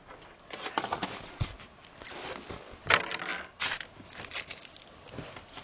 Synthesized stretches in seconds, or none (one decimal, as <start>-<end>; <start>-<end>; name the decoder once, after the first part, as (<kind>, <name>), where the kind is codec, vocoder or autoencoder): none